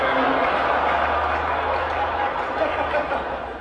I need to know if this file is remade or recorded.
recorded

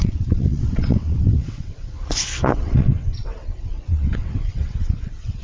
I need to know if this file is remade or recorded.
remade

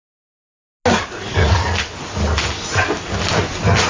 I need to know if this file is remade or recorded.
recorded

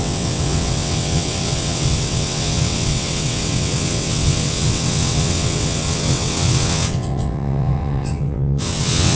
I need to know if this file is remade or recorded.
remade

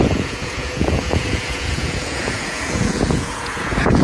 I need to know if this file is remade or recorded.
remade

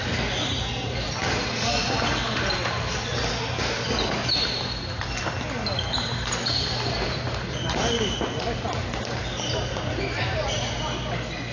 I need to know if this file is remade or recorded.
recorded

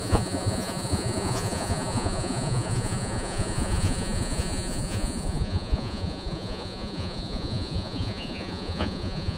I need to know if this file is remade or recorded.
remade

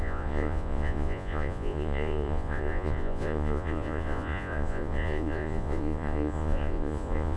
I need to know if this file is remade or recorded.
remade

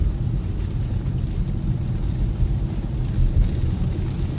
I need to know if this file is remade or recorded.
recorded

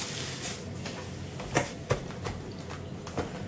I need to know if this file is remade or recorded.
recorded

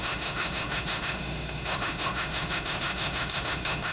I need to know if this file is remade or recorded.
remade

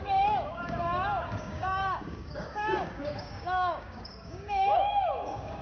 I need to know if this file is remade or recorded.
remade